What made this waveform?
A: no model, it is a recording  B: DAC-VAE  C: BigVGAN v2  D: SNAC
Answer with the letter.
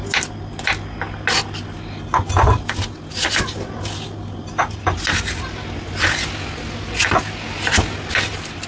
A